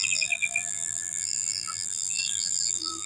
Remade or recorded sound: remade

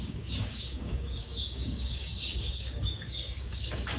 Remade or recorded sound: remade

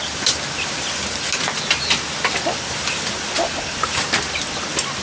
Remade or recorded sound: recorded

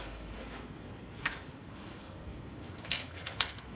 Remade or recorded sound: remade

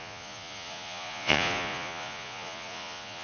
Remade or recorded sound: remade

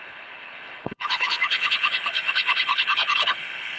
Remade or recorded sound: remade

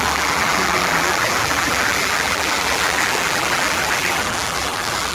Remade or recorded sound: remade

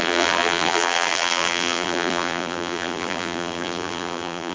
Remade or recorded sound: remade